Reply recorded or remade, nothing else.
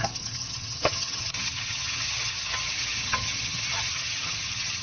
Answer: remade